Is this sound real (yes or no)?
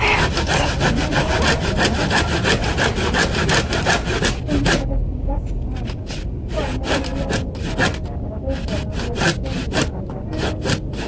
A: yes